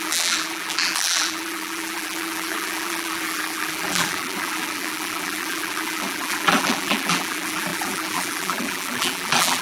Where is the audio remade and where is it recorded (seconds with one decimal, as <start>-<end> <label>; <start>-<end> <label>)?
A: 0.0-9.6 remade